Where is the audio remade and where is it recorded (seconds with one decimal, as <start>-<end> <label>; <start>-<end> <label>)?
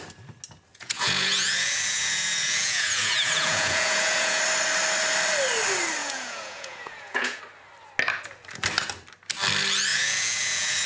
0.0-0.7 recorded; 0.7-4.4 remade; 4.4-6.0 recorded; 6.0-7.4 remade; 7.4-9.9 recorded; 9.9-10.9 remade